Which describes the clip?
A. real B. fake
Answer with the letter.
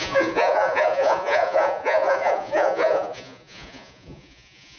B